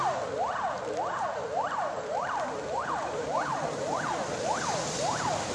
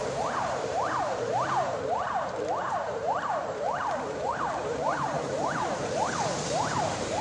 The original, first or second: first